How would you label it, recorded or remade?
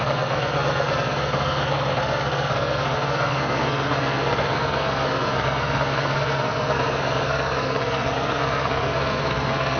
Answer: remade